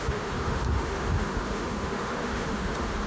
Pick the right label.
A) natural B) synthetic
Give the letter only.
B